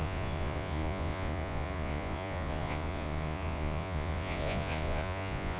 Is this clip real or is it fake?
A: fake